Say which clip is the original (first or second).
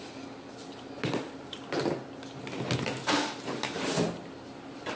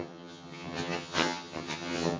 first